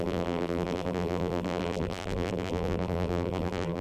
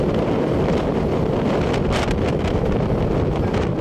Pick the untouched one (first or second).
second